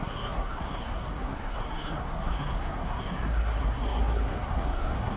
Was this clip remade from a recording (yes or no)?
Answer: yes